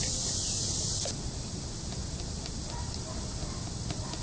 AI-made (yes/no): no